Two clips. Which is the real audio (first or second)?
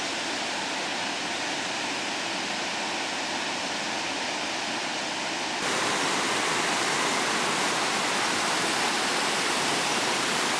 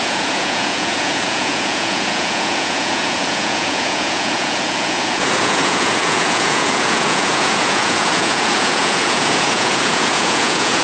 first